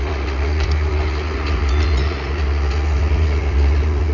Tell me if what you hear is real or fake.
fake